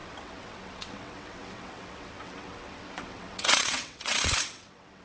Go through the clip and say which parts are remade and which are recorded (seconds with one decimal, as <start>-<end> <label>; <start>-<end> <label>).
0.0-5.0 remade